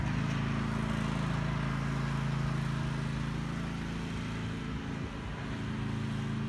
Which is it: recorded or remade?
recorded